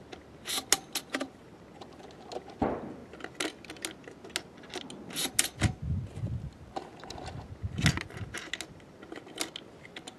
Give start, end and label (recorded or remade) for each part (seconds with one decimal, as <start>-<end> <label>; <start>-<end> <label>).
0.0-10.2 recorded